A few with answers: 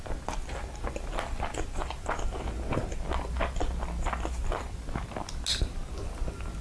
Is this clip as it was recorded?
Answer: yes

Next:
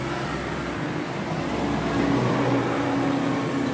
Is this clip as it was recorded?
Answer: yes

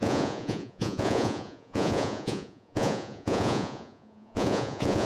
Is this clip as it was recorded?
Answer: no